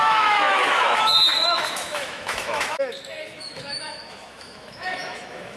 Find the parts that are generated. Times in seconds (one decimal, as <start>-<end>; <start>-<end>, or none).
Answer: 0.0-5.6